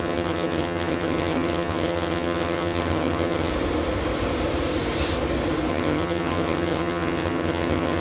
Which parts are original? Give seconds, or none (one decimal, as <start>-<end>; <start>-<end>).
3.5-5.7